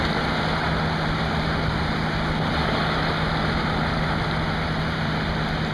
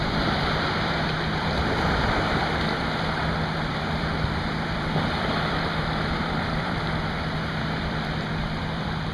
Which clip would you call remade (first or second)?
second